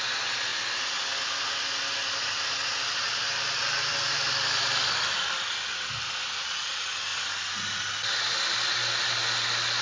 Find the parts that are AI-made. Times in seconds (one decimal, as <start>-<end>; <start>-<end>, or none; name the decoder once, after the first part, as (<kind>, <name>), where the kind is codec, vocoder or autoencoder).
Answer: none

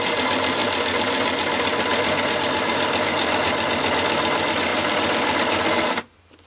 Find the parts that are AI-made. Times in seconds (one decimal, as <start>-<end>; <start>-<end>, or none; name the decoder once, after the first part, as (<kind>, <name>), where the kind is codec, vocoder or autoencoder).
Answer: none

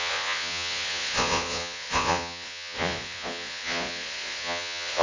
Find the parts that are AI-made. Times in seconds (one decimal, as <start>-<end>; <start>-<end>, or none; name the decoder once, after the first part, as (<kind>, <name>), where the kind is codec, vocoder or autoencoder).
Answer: 0.0-5.0 (vocoder, Vocos)

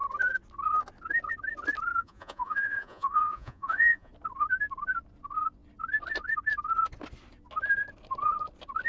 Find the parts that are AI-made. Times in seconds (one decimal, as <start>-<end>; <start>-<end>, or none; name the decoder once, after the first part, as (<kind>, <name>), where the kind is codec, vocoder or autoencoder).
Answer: 2.0-4.1 (vocoder, Vocos)

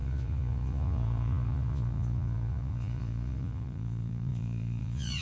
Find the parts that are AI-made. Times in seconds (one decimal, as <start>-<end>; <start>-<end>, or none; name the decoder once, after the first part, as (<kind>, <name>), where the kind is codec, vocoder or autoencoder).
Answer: 0.0-5.2 (vocoder, Vocos)